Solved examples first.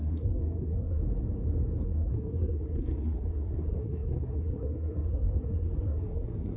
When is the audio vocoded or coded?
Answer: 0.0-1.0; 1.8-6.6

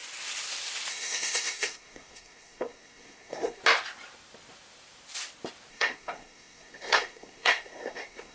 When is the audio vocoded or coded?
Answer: 0.9-3.6; 5.7-8.3

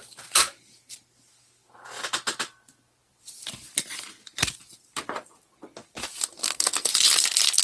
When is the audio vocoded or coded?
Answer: 6.4-6.9

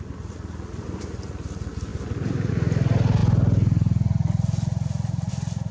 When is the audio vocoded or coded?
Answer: none

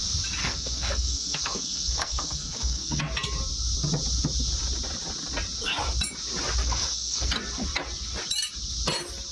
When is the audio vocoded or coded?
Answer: 0.4-3.0; 6.6-7.3